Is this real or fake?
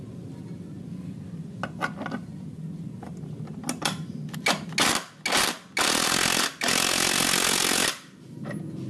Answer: real